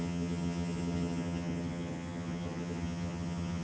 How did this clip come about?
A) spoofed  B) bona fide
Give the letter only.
A